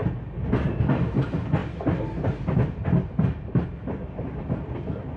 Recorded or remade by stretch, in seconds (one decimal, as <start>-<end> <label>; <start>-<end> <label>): 0.0-5.2 recorded